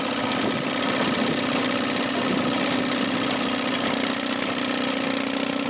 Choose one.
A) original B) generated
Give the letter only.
A